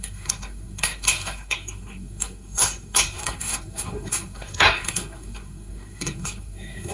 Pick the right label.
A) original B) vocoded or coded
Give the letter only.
B